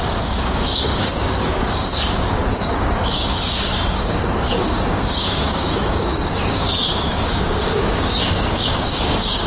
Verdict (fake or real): fake